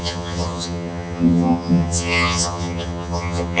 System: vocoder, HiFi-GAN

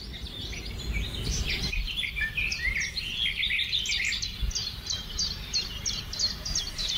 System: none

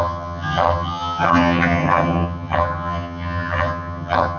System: vocoder, HiFi-GAN